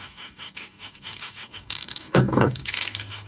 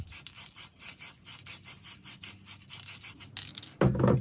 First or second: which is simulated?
first